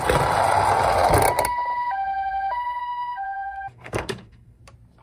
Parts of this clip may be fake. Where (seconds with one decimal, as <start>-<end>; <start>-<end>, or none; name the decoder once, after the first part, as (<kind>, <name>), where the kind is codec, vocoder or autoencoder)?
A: 2.8-4.6 (codec, SNAC)